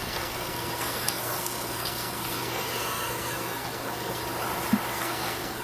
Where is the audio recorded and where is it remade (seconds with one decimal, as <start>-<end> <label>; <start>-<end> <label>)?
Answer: 0.0-4.2 remade; 4.2-4.9 recorded; 4.9-5.6 remade